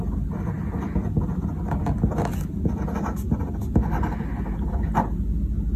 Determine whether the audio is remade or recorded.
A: recorded